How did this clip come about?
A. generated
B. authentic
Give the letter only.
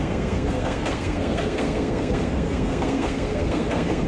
A